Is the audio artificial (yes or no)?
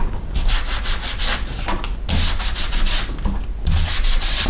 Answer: no